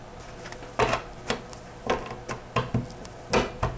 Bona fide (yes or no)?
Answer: yes